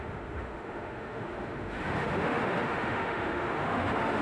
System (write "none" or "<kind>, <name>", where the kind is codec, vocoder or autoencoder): autoencoder, DAC-VAE